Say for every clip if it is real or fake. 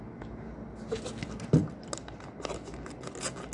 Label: real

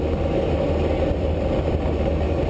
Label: real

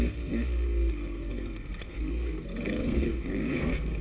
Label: fake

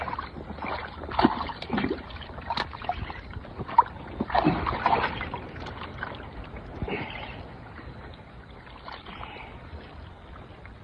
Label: real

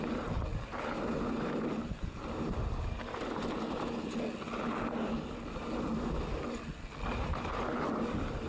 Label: real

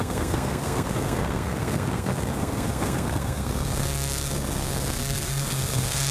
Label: fake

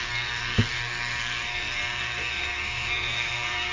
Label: fake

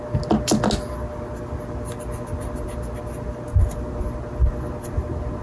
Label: real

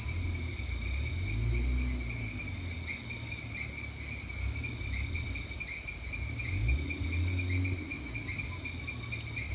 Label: real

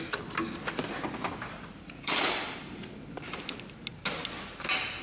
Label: real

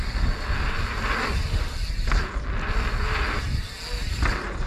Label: real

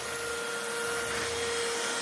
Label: real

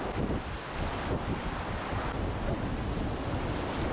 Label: real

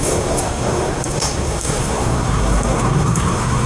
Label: fake